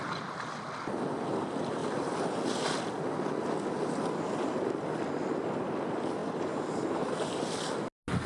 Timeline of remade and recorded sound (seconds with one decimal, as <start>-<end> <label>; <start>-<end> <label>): 0.0-8.3 recorded